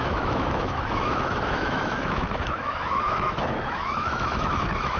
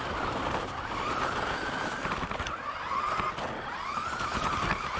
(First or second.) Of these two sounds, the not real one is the first